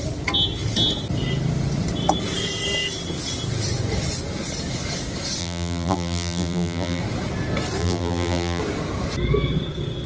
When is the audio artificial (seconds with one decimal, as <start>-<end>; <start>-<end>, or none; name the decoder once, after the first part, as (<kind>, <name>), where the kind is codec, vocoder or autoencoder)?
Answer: 5.4-7.0 (vocoder, BigVGAN v2); 7.8-8.6